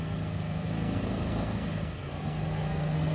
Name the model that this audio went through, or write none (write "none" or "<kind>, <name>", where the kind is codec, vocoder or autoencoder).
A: codec, SNAC